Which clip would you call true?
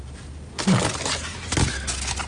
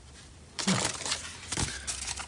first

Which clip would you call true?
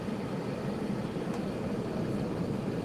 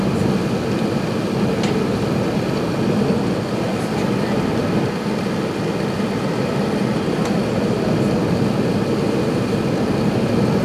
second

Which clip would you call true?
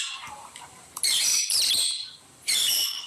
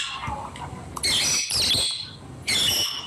second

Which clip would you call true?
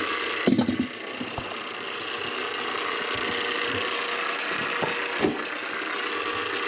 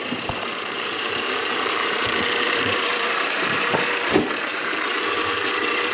first